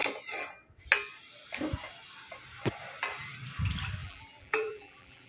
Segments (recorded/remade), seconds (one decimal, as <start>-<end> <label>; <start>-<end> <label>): 0.0-4.0 recorded; 4.0-5.3 remade